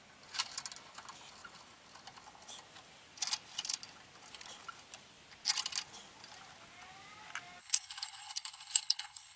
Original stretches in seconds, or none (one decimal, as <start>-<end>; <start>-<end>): 0.0-7.6